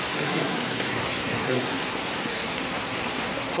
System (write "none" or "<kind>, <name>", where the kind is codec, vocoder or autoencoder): codec, SNAC